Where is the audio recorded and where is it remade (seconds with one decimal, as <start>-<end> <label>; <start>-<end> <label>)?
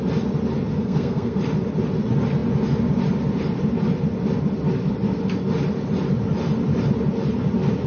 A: 0.0-0.7 recorded; 0.7-1.4 remade; 1.4-7.9 recorded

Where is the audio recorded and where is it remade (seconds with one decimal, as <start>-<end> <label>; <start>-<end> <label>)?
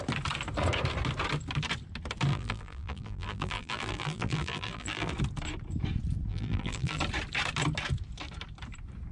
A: 0.0-2.3 recorded; 2.3-5.1 remade; 5.1-6.3 recorded; 6.3-7.0 remade; 7.0-9.1 recorded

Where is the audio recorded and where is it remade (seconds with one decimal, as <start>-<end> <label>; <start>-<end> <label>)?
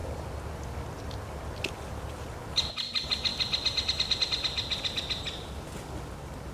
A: 0.0-6.5 recorded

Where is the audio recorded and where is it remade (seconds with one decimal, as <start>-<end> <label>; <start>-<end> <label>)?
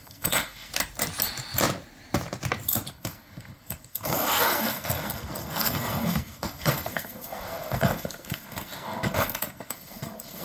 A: 0.0-0.7 remade; 0.7-2.9 recorded; 2.9-10.4 remade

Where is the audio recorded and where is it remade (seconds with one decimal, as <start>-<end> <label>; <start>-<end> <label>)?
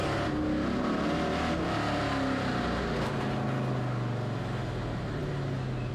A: 0.0-5.9 recorded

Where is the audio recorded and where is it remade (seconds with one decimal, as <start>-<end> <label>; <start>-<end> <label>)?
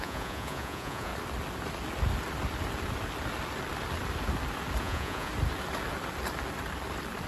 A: 0.0-1.1 remade; 1.1-4.8 recorded; 4.8-5.3 remade; 5.3-7.3 recorded